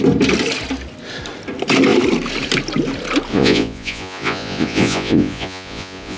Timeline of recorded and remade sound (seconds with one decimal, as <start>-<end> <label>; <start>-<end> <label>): 0.0-3.3 recorded; 3.3-6.2 remade